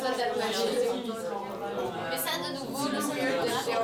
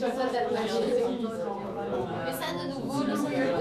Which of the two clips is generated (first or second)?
second